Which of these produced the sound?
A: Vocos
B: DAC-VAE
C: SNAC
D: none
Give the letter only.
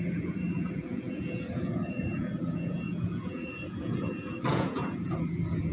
A